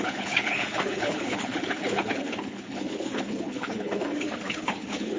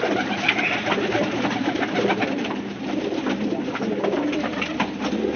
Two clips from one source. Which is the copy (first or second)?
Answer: first